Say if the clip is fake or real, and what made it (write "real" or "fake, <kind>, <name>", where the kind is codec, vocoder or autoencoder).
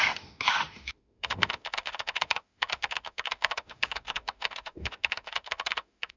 fake, autoencoder, DAC-VAE